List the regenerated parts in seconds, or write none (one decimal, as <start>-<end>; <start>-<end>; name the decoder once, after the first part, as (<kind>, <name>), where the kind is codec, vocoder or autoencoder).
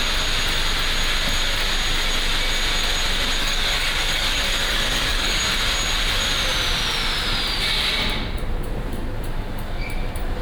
3.4-5.4 (codec, DAC)